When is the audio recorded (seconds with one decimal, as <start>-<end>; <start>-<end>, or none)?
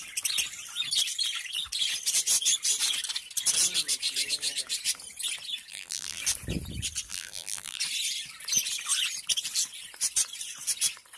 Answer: 0.0-5.7; 6.2-7.1; 7.8-11.2